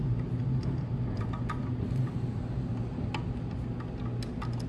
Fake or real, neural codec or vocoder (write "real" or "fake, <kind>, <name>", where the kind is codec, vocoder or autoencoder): real